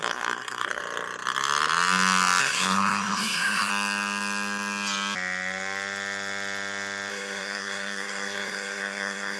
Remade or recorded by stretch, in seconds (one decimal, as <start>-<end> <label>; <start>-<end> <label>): 0.0-0.8 remade; 0.8-2.4 recorded; 2.4-3.7 remade; 3.7-7.1 recorded; 7.1-9.4 remade